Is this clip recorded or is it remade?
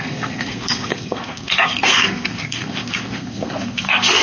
remade